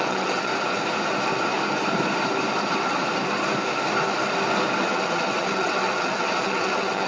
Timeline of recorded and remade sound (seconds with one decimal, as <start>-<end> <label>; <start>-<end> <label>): 0.0-0.5 remade; 0.5-4.8 recorded; 4.8-7.1 remade